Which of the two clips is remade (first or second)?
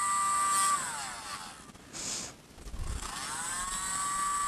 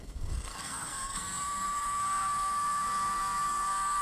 second